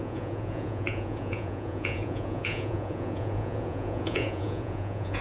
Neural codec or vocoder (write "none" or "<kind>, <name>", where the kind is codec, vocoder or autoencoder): vocoder, Vocos